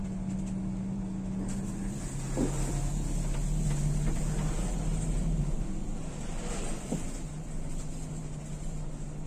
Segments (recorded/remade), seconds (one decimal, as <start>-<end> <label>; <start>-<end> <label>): 0.0-9.3 recorded